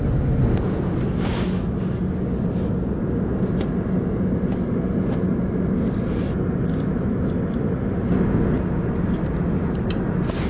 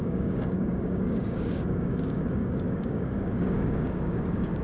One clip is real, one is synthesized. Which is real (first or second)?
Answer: first